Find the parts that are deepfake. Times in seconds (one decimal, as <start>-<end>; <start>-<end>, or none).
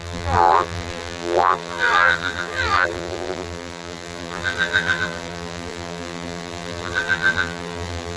0.0-8.2